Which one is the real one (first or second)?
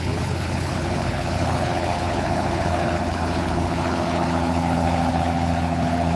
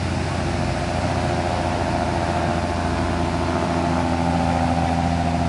second